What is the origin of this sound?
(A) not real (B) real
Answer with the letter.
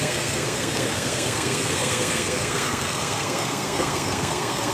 A